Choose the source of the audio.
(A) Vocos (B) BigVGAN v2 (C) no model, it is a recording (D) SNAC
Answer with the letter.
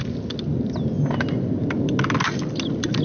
C